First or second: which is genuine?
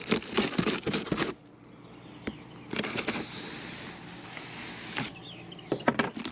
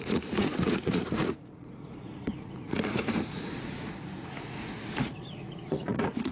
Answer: first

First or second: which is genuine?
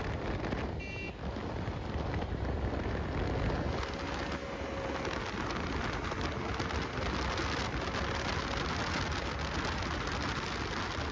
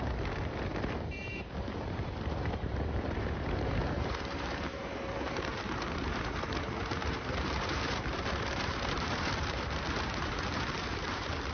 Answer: first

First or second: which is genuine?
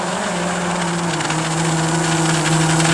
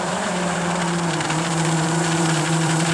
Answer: first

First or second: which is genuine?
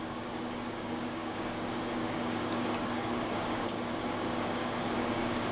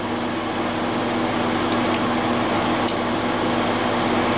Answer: second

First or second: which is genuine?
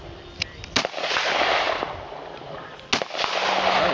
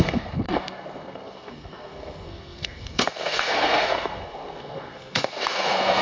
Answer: first